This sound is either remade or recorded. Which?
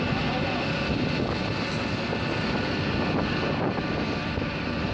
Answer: recorded